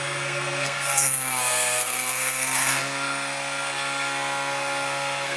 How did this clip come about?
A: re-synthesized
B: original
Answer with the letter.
A